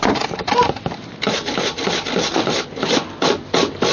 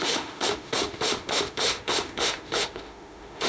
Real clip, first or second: first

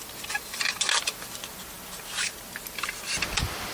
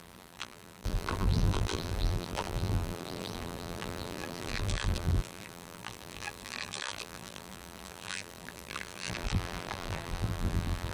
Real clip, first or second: first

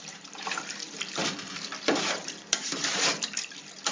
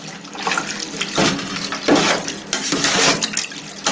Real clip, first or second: second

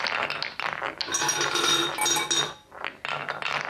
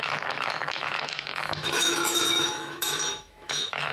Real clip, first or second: first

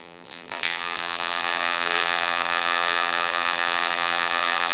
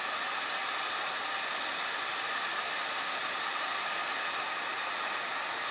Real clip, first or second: second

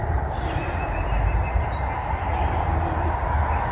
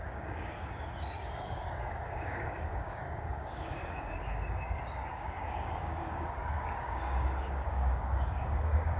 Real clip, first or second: first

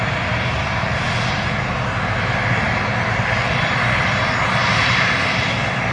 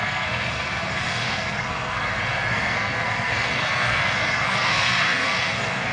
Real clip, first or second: first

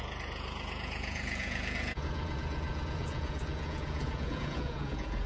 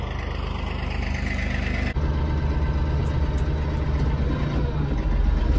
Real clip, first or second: second